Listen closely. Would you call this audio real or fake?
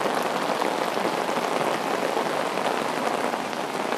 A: real